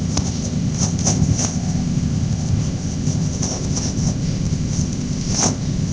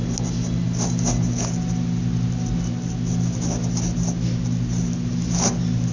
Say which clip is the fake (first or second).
first